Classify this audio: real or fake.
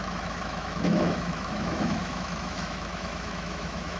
fake